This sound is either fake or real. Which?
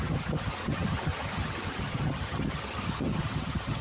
fake